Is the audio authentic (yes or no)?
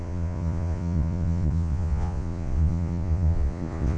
no